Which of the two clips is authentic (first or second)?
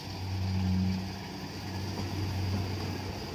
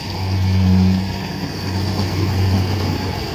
first